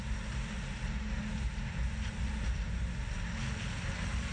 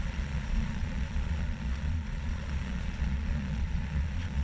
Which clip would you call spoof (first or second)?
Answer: second